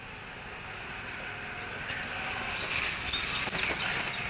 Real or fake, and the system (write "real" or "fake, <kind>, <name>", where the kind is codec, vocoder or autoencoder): real